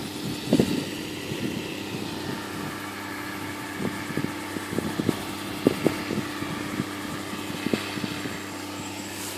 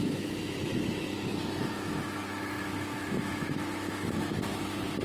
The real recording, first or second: first